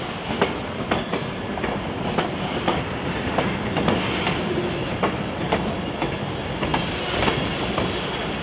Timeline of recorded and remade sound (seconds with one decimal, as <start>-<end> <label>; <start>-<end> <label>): 0.0-8.4 recorded